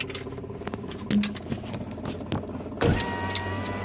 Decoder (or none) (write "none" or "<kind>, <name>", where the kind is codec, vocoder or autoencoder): none